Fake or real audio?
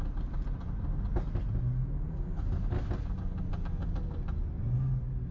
real